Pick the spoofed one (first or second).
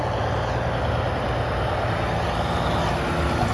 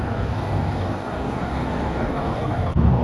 second